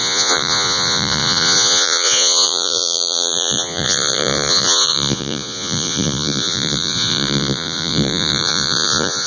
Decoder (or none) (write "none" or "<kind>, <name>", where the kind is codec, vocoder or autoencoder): vocoder, Vocos